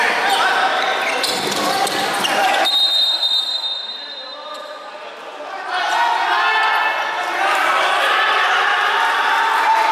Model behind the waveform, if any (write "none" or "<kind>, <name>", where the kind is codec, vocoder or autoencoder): none